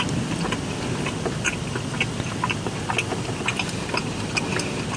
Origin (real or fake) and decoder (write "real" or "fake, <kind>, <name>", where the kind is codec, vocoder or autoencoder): real